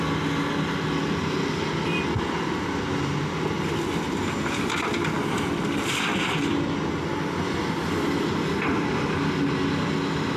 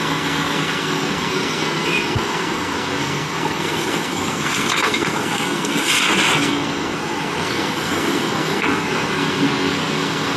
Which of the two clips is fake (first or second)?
second